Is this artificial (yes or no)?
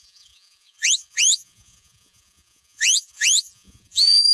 yes